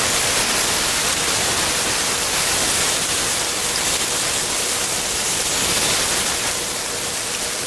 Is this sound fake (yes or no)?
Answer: no